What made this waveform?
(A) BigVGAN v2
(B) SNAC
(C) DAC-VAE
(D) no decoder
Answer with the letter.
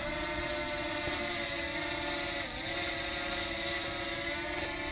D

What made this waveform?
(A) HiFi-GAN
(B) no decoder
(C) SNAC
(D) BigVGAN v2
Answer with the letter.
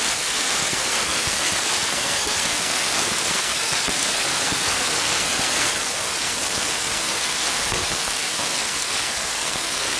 C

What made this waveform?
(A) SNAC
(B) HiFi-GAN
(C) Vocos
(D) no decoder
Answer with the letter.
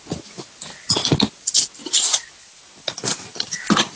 D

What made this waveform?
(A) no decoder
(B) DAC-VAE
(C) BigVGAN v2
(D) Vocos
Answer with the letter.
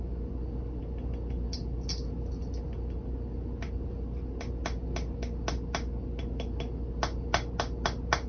A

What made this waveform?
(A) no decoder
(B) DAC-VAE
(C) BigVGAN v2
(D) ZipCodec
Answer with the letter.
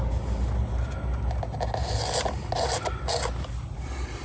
A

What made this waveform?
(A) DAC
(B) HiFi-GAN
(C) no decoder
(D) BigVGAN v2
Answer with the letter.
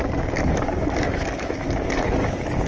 A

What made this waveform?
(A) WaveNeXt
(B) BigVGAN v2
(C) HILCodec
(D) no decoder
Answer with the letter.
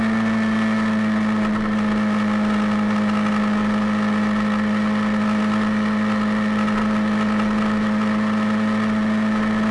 D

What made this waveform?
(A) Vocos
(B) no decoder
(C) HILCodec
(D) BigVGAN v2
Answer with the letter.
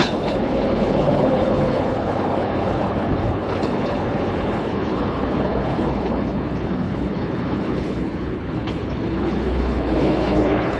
C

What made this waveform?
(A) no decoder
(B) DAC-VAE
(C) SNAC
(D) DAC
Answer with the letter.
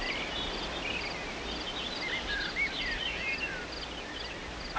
A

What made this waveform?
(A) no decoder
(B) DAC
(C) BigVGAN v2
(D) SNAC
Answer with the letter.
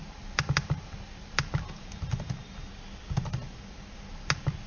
A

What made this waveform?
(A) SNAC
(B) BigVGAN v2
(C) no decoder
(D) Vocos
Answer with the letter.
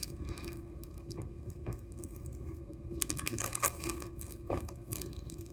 A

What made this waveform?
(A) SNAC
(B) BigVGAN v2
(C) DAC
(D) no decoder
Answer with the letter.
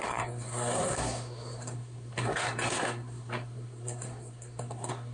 A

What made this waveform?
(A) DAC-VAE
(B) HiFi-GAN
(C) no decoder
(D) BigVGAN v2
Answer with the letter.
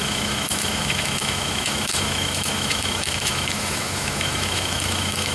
A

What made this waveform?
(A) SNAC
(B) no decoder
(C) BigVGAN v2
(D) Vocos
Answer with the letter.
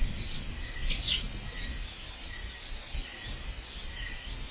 B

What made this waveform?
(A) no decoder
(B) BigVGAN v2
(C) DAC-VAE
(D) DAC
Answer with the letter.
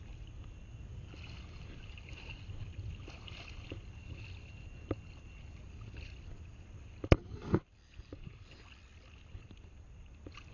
A